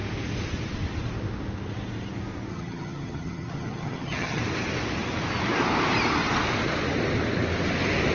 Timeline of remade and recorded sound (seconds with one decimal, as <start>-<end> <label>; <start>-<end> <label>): 0.0-2.5 recorded; 2.5-4.4 remade; 4.4-8.1 recorded